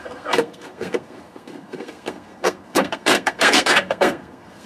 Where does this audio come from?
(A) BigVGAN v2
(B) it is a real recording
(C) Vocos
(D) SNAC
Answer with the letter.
D